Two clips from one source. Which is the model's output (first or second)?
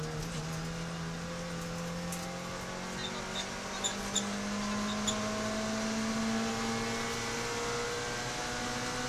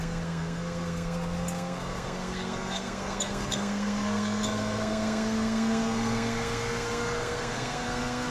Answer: second